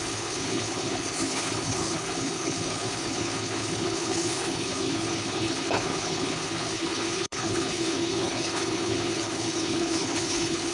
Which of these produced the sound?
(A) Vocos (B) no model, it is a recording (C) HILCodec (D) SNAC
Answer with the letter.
C